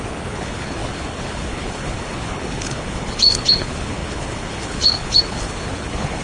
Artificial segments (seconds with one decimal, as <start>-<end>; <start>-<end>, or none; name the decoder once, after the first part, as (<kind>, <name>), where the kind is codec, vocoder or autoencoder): 0.0-6.2 (codec, HILCodec)